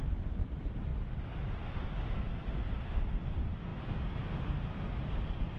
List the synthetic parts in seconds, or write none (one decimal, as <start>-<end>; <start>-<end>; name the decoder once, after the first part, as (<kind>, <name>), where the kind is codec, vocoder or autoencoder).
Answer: none